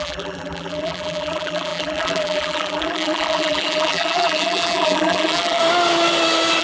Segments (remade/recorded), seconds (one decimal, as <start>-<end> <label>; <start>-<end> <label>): 0.0-5.6 remade; 5.6-6.6 recorded